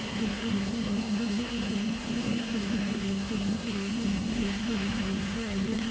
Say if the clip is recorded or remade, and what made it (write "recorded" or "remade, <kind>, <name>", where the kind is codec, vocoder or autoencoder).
remade, codec, SNAC